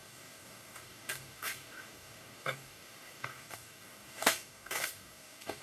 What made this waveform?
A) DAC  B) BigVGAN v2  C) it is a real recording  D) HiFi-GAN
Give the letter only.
A